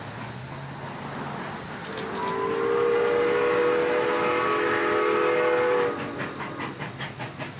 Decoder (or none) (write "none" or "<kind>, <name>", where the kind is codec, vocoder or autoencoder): none